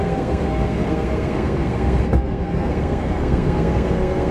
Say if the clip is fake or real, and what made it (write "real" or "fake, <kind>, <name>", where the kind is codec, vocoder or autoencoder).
fake, codec, SNAC